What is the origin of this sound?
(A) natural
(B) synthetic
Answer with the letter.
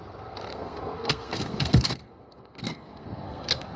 B